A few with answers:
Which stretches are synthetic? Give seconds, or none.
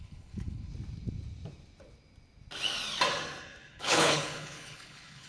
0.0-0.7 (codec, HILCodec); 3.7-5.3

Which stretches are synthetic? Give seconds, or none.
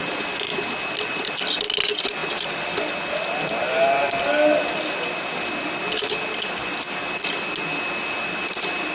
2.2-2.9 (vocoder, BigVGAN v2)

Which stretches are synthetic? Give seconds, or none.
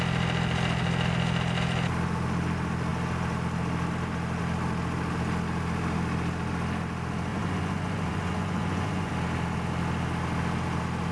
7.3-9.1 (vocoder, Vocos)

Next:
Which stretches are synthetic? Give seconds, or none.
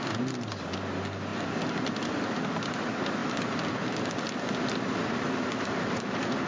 none